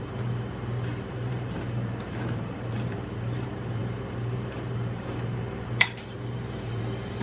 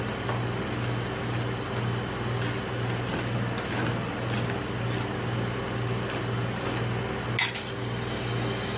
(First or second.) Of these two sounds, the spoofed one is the first